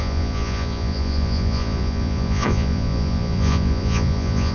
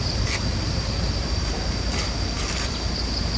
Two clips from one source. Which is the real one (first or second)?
second